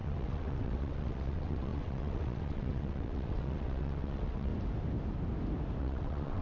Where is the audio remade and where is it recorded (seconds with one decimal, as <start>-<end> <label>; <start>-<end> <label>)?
0.0-4.5 remade; 4.5-5.8 recorded; 5.8-6.4 remade